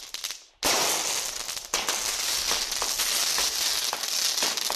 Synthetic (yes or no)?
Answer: no